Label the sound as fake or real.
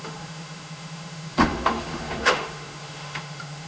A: fake